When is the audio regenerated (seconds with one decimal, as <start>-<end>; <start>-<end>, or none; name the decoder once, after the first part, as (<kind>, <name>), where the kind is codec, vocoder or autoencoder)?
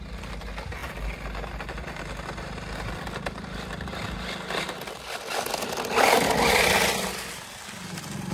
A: none